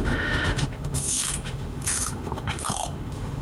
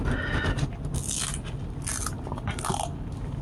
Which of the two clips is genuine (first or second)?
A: second